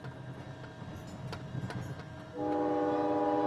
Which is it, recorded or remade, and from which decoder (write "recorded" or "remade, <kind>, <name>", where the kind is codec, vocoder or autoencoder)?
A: recorded